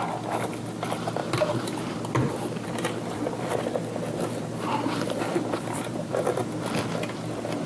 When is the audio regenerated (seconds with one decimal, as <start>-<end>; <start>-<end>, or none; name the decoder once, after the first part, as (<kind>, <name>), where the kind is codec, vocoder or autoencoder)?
1.2-3.6 (vocoder, BigVGAN v2); 4.7-6.4